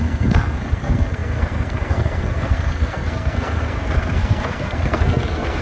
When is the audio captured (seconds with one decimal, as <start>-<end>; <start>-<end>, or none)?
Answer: none